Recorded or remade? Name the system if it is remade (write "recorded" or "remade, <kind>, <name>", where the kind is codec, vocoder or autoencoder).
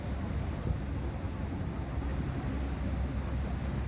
recorded